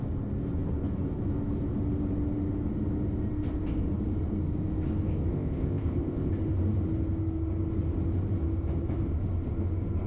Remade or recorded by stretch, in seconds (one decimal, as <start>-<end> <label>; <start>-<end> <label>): 0.0-5.3 recorded; 5.3-6.3 remade; 6.3-10.1 recorded